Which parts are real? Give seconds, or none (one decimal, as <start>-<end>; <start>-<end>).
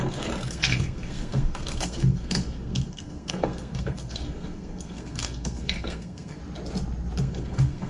6.4-7.2